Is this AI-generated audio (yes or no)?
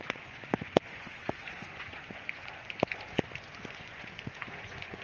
yes